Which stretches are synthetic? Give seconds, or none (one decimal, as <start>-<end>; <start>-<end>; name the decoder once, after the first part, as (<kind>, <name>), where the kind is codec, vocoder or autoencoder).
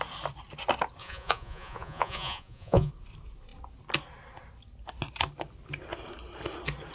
1.0-2.9 (vocoder, Vocos)